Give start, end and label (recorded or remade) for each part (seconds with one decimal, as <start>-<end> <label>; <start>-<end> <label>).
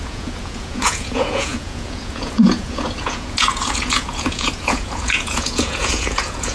0.0-6.5 remade